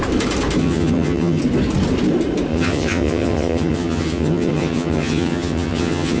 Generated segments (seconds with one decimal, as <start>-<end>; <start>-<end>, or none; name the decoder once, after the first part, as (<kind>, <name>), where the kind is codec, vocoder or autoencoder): 0.6-1.4 (vocoder, HiFi-GAN); 2.5-6.2